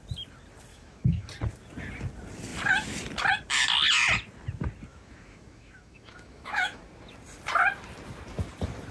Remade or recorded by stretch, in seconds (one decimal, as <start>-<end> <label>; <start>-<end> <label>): 0.0-0.7 recorded; 0.7-1.3 remade; 1.3-4.9 recorded; 4.9-6.8 remade; 6.8-8.9 recorded